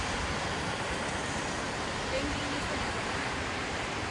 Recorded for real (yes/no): no